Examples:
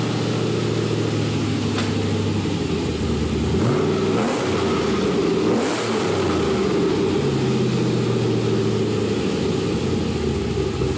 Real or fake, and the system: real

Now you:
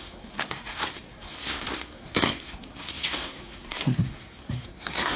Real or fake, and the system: fake, codec, SNAC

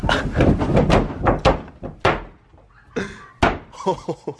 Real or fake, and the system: real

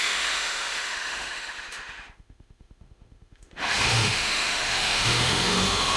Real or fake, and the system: fake, autoencoder, DAC-VAE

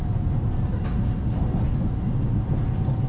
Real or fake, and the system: real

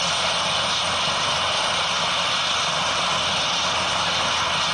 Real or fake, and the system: real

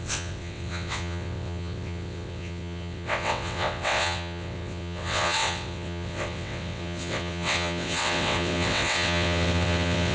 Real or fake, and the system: fake, vocoder, WaveNeXt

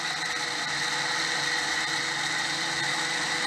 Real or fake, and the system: real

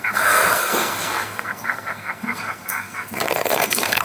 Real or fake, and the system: fake, codec, SNAC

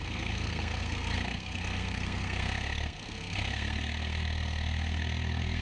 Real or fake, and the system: fake, codec, SNAC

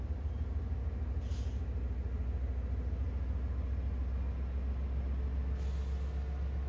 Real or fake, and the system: real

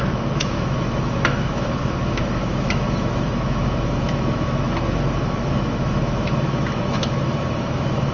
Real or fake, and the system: fake, autoencoder, DAC-VAE